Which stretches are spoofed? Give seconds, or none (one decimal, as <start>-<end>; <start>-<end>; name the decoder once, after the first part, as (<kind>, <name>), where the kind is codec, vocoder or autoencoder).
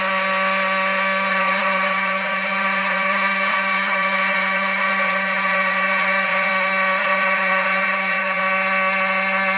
1.3-6.5 (vocoder, HiFi-GAN); 7.0-8.4